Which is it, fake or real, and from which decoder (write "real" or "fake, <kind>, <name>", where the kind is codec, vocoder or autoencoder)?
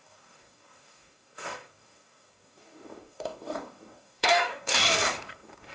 fake, codec, DAC